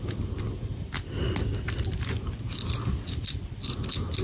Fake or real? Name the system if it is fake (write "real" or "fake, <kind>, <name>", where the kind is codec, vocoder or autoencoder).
real